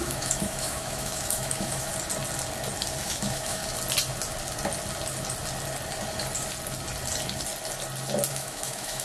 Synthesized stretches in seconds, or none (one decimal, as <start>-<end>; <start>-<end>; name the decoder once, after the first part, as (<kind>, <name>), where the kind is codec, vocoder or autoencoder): 0.0-1.9 (autoencoder, DAC-VAE); 3.0-3.6; 8.3-9.0